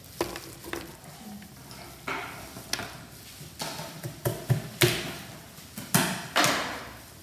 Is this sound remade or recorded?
recorded